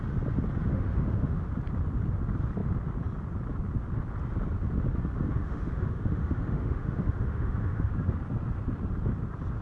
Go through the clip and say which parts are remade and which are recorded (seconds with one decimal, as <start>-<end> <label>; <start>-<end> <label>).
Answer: 0.0-0.7 recorded; 0.7-1.5 remade; 1.5-5.4 recorded; 5.4-7.9 remade; 7.9-9.6 recorded